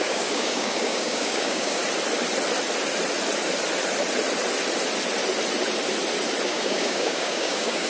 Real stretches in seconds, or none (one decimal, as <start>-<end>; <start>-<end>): 1.8-6.5